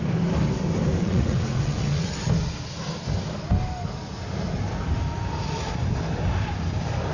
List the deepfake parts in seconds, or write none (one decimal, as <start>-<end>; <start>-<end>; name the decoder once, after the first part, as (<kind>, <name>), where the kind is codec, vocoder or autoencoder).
1.0-2.2 (vocoder, WaveNeXt)